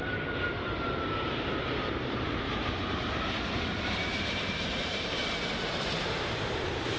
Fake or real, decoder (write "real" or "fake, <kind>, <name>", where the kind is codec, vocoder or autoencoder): fake, vocoder, BigVGAN v2